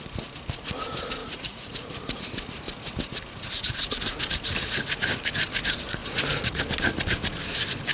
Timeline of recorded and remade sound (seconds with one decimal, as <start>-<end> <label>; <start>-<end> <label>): 0.0-1.2 recorded; 1.2-2.2 remade; 2.2-6.0 recorded; 6.0-6.6 remade; 6.6-7.9 recorded